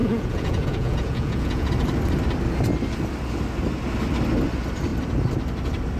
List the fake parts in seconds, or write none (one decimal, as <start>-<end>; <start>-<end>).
0.0-1.7